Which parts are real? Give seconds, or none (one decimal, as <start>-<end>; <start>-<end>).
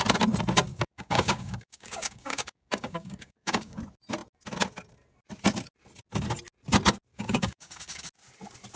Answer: 0.0-0.7; 3.8-7.1; 8.0-8.8